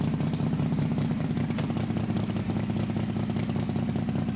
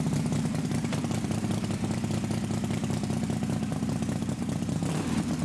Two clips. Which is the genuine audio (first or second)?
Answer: first